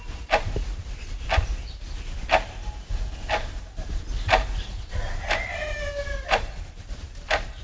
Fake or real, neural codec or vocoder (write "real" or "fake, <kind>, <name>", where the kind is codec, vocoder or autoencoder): real